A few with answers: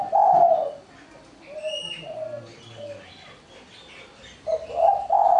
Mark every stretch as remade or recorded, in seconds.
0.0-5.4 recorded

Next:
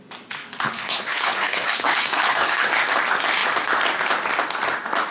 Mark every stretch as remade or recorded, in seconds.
0.0-0.4 recorded; 0.4-2.7 remade; 2.7-5.1 recorded

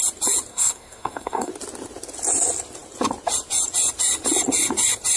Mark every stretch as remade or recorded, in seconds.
0.0-0.5 recorded; 0.5-1.5 remade; 1.5-5.2 recorded